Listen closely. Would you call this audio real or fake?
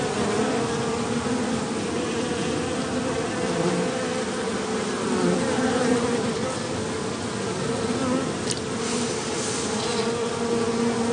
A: real